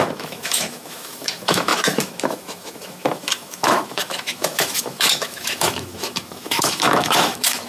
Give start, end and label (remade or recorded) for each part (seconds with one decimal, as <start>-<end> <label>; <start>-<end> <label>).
0.0-7.7 remade